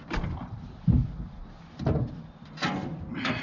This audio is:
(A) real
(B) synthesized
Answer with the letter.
B